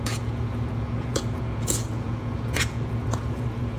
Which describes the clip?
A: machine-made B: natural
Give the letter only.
A